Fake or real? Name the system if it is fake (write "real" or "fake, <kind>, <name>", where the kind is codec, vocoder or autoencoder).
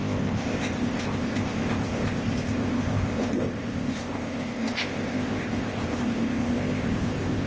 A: fake, codec, ZipCodec